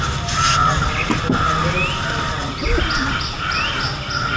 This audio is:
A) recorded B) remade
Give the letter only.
A